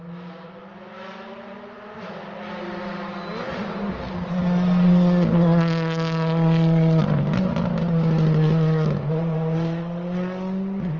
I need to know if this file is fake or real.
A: real